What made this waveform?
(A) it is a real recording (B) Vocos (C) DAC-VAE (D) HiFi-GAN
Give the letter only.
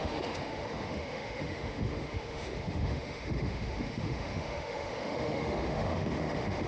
C